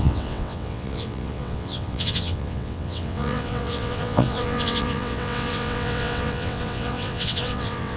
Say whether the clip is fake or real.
fake